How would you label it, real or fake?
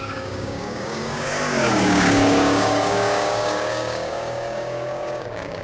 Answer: fake